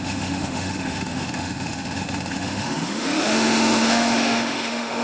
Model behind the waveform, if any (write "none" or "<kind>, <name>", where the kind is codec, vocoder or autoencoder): autoencoder, DAC-VAE